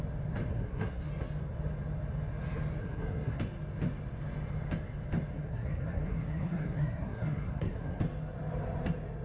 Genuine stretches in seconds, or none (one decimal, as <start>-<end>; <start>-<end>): 0.0-0.5; 1.1-2.8; 3.4-5.3; 8.0-9.2